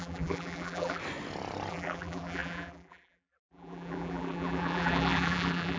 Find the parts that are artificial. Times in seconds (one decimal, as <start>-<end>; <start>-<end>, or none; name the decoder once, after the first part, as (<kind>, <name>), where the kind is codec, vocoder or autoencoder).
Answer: 0.0-1.0 (vocoder, BigVGAN v2); 1.7-5.8